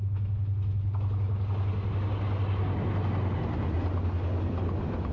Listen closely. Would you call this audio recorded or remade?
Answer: recorded